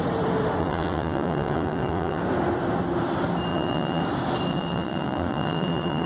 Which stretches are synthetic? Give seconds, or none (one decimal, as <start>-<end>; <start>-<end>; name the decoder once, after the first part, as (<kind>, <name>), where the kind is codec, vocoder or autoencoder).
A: 0.6-2.2 (vocoder, WaveNeXt); 3.5-4.0; 4.5-6.1